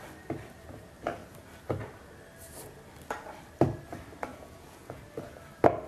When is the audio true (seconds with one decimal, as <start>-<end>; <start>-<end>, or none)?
0.0-4.3; 5.0-5.9